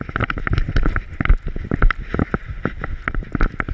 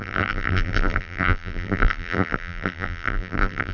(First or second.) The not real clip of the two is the second